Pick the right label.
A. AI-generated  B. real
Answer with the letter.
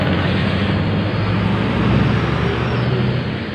B